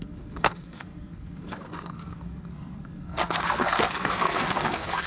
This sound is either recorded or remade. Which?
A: remade